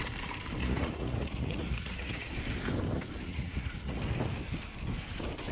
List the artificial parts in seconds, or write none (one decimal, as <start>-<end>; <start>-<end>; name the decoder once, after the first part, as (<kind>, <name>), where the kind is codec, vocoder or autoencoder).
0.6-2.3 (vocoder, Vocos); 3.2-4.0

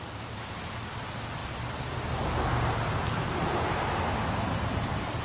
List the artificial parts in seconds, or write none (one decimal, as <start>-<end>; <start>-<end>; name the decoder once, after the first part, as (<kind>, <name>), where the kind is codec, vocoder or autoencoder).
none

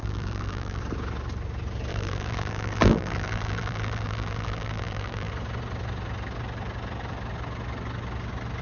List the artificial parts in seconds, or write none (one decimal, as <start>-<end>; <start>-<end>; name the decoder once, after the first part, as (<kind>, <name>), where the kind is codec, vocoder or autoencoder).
0.0-0.8 (vocoder, BigVGAN v2); 1.9-5.3